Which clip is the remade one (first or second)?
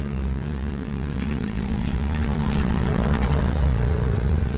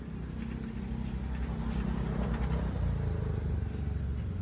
first